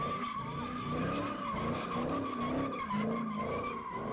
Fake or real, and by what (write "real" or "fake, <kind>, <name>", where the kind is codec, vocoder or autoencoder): real